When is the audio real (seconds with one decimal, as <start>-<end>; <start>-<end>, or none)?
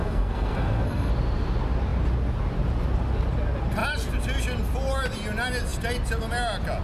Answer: 1.1-6.8